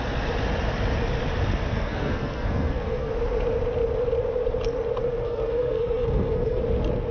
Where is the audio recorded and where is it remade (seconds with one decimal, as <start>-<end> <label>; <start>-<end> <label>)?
0.0-1.7 recorded; 1.7-3.1 remade; 3.1-5.0 recorded; 5.0-6.6 remade; 6.6-7.1 recorded